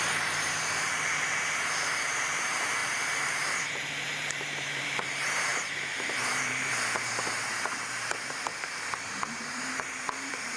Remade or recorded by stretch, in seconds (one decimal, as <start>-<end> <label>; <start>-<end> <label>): 0.0-10.6 remade